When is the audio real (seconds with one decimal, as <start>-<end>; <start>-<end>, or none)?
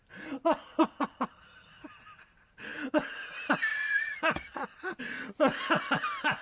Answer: 0.0-3.7; 5.0-6.4